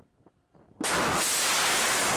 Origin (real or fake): real